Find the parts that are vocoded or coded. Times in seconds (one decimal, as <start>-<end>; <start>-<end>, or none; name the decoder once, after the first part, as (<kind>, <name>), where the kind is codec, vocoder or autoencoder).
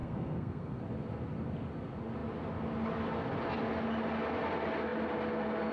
0.0-0.8 (codec, SNAC)